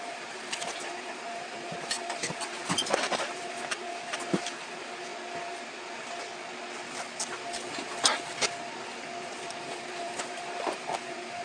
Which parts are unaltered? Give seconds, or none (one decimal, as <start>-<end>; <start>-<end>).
5.1-9.6